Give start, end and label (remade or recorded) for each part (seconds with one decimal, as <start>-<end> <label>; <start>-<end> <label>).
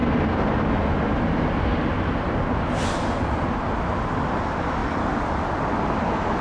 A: 0.0-6.4 recorded